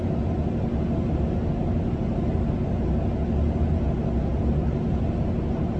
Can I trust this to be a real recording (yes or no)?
yes